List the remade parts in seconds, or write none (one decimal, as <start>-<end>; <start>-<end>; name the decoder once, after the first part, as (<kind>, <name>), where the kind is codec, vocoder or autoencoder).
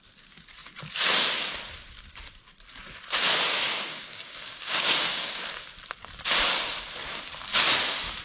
3.9-5.4 (codec, DAC)